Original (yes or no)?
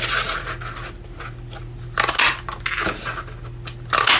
yes